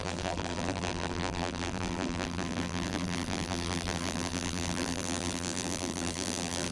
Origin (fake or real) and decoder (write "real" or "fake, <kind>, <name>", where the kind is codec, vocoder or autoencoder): fake, vocoder, BigVGAN v2